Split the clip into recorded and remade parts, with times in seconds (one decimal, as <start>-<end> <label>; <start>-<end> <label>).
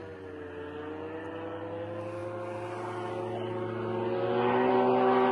0.0-5.3 recorded